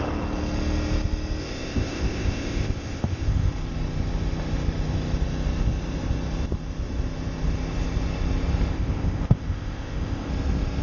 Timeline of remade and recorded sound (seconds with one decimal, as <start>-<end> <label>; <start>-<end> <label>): 0.0-1.4 recorded; 1.4-3.5 remade; 3.5-8.7 recorded; 8.7-10.3 remade; 10.3-10.8 recorded